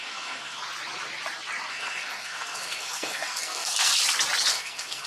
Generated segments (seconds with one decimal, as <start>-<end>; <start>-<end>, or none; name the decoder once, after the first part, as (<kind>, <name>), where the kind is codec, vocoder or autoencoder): 0.0-0.6 (codec, SNAC); 1.7-3.9; 4.5-5.1